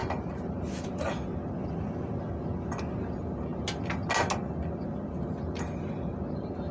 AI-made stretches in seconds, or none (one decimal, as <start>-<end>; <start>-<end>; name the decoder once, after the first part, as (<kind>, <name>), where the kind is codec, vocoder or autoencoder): 0.0-1.0 (vocoder, BigVGAN v2)